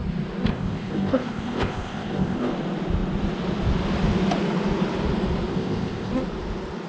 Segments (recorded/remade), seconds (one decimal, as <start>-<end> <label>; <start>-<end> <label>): 0.0-0.5 recorded; 0.5-2.5 remade; 2.5-5.5 recorded; 5.5-6.1 remade; 6.1-6.9 recorded